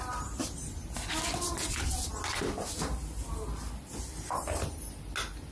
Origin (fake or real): real